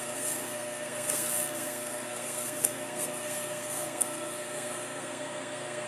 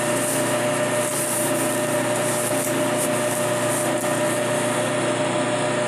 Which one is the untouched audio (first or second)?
second